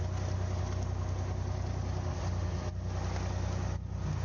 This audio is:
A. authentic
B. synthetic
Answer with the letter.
A